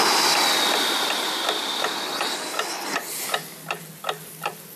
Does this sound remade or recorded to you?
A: recorded